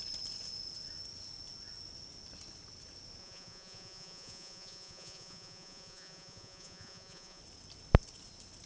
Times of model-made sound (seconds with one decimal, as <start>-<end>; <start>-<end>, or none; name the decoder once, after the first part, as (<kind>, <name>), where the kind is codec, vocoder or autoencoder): 3.2-7.4 (vocoder, Vocos)